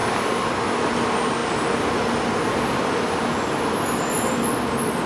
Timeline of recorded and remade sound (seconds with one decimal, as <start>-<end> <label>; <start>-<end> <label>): 0.0-5.1 recorded